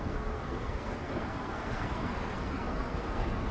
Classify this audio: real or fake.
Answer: fake